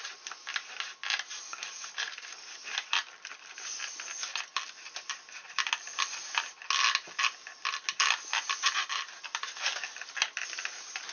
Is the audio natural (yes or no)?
yes